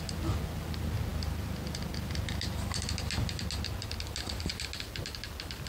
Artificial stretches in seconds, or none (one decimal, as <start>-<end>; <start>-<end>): none